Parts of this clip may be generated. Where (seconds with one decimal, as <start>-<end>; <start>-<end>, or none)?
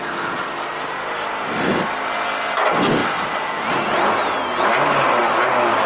none